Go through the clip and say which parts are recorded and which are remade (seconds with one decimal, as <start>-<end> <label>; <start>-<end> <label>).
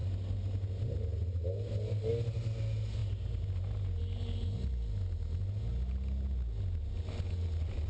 0.0-7.9 recorded